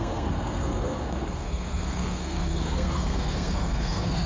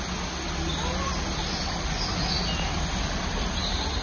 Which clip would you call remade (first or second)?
first